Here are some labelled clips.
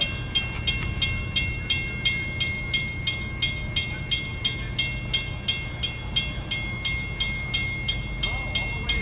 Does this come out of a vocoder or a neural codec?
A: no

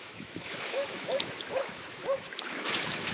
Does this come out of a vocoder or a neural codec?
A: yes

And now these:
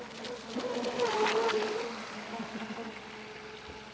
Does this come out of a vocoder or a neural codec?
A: no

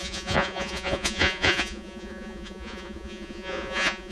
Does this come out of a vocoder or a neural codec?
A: yes